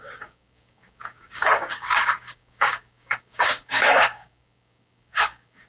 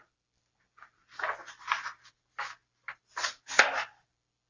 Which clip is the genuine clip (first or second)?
second